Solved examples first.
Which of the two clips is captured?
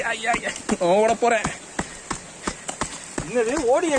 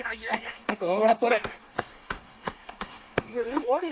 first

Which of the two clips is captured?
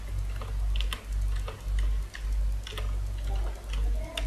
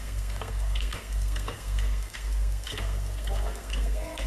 first